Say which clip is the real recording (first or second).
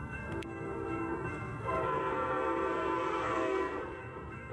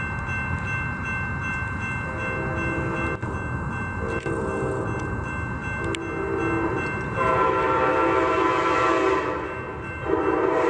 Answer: second